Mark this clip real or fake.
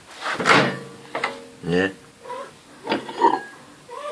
real